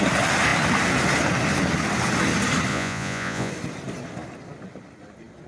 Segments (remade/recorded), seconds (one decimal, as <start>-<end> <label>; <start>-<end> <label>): 0.0-2.7 recorded; 2.7-3.5 remade; 3.5-5.5 recorded